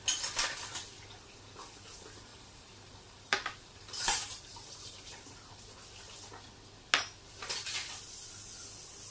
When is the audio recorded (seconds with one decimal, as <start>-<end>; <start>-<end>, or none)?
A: 0.0-2.3; 5.5-9.1